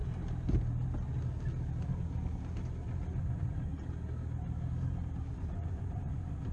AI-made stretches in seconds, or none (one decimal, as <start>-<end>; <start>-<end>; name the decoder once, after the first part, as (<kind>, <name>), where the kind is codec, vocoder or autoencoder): 3.2-3.7 (vocoder, Vocos); 5.3-6.5